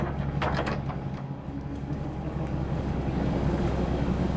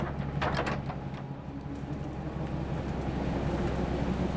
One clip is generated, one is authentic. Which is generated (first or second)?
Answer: first